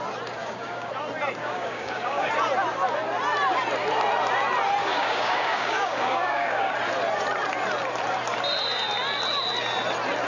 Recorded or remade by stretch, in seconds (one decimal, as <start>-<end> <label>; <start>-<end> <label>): 0.0-0.4 recorded; 0.4-0.9 remade; 0.9-1.4 recorded; 1.4-2.3 remade; 2.3-4.8 recorded; 4.8-6.7 remade; 6.7-10.3 recorded